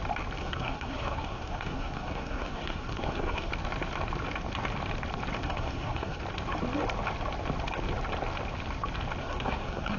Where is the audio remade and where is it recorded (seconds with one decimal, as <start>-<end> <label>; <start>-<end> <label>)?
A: 0.0-0.4 recorded; 0.4-3.5 remade; 3.5-5.4 recorded; 5.4-6.2 remade; 6.2-9.2 recorded; 9.2-10.0 remade